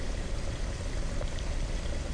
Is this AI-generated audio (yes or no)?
no